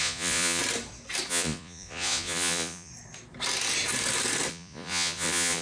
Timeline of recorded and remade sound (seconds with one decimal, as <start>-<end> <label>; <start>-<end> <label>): 0.0-0.6 remade; 0.6-1.3 recorded; 1.3-2.9 remade; 2.9-4.5 recorded; 4.5-5.6 remade